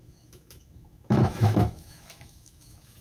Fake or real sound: fake